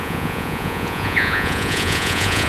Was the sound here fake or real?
fake